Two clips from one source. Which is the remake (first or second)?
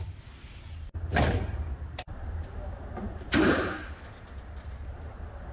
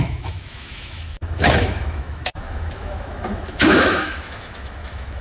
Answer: second